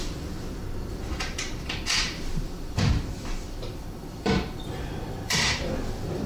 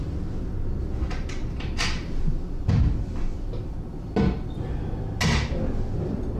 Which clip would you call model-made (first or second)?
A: first